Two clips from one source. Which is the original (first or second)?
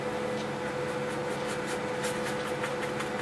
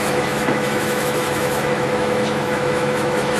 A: first